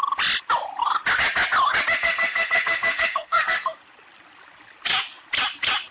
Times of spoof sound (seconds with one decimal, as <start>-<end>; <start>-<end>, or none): 2.0-3.8